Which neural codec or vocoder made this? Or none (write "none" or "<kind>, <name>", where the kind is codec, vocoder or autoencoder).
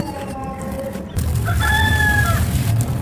none